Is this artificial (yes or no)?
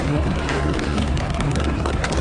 yes